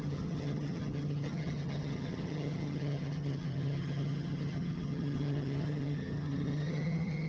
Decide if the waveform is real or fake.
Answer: fake